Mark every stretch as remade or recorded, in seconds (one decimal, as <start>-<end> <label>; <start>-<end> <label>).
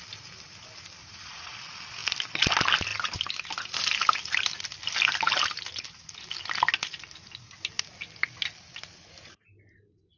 0.0-1.0 recorded; 1.0-1.5 remade; 1.5-10.2 recorded